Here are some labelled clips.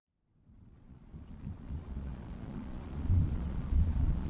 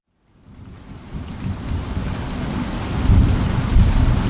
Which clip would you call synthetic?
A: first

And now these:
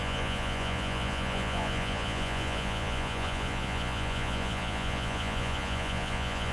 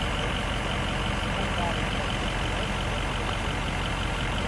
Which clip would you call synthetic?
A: first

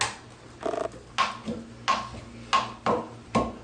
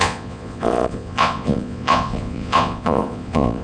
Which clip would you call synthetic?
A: second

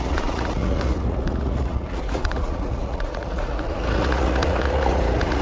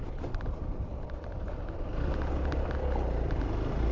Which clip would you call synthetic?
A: first